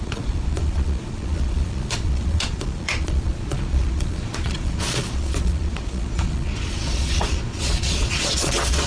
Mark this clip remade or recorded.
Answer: remade